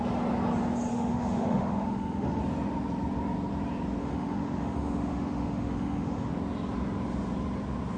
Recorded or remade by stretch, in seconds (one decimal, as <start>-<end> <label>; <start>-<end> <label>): 0.0-0.9 recorded; 0.9-2.4 remade; 2.4-4.0 recorded; 4.0-6.3 remade; 6.3-8.0 recorded